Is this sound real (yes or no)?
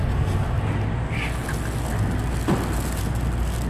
yes